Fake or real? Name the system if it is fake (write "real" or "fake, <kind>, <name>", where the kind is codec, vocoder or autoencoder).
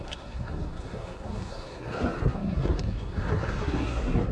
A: fake, codec, SNAC